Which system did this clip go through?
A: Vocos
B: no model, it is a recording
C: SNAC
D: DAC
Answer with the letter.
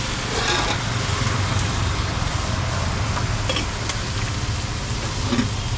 B